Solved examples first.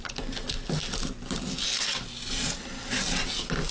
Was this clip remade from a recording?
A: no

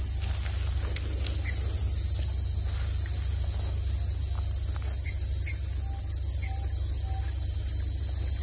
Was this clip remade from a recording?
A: no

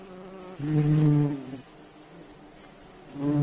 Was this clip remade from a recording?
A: no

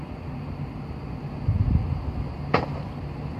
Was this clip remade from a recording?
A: no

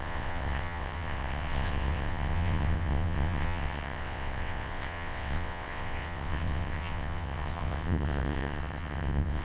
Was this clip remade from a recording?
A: yes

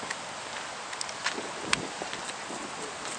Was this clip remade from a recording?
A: no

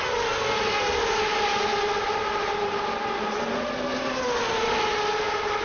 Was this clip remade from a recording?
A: no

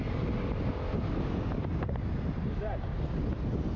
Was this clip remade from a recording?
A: no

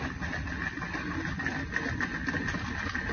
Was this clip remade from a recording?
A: no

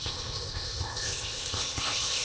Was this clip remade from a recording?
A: yes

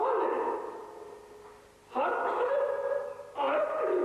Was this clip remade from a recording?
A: no